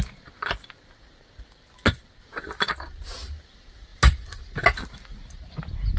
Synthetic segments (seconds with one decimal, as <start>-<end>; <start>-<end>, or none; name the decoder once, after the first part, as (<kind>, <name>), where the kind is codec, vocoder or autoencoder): none